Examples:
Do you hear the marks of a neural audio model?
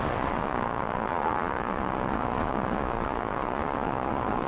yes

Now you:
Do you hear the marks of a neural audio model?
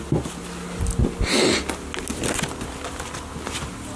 no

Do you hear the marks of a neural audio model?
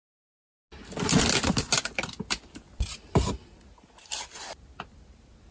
no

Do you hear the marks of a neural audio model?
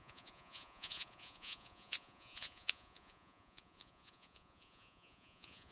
yes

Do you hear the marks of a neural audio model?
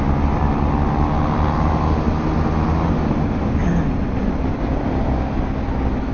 no